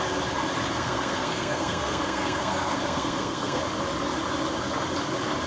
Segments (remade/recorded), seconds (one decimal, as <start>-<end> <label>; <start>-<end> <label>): 0.0-0.7 recorded; 0.7-3.6 remade; 3.6-5.5 recorded

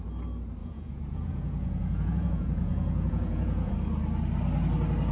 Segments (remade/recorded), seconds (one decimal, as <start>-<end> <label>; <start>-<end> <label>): 0.0-0.6 recorded; 0.6-3.7 remade; 3.7-5.1 recorded

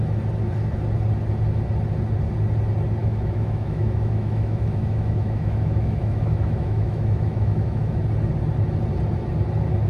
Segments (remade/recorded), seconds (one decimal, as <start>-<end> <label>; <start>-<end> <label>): 0.0-3.0 recorded; 3.0-8.0 remade; 8.0-9.9 recorded

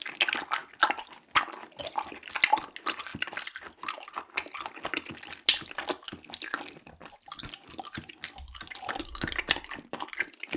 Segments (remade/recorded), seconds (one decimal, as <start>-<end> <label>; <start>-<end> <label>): 0.0-10.6 recorded

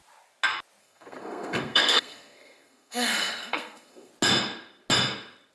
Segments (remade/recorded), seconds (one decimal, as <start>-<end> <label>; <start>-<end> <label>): 0.0-0.8 recorded; 0.8-4.1 remade; 4.1-5.5 recorded

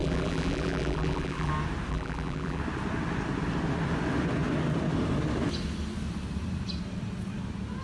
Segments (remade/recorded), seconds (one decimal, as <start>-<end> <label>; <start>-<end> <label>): 0.0-1.5 remade; 1.5-1.9 recorded; 1.9-2.6 remade; 2.6-7.8 recorded

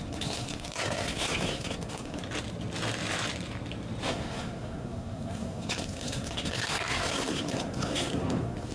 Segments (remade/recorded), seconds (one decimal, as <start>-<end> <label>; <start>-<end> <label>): 0.0-2.2 remade; 2.2-4.1 recorded; 4.1-8.7 remade